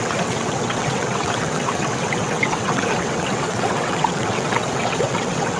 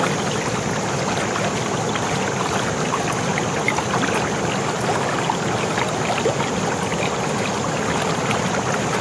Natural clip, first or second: second